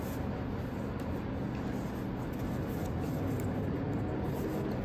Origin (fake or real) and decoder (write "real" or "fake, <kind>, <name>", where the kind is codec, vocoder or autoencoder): real